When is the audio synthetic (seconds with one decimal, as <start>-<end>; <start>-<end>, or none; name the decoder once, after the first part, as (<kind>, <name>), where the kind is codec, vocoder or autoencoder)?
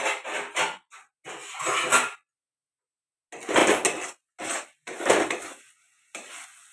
none